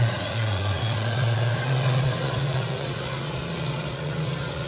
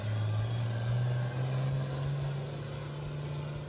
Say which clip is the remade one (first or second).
first